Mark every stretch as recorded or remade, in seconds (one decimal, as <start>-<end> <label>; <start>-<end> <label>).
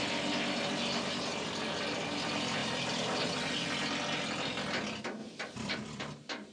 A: 0.0-6.5 recorded